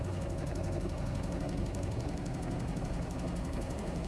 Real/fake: fake